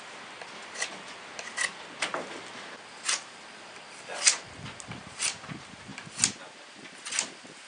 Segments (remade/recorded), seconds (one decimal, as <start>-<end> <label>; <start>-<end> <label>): 0.0-7.7 recorded